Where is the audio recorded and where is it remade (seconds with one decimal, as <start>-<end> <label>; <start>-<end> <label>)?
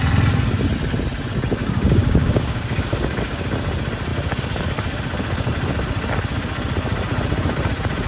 0.0-1.6 recorded; 1.6-3.4 remade; 3.4-8.1 recorded